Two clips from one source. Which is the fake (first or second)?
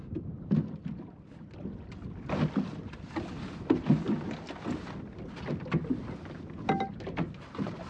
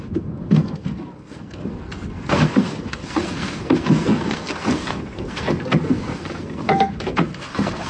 second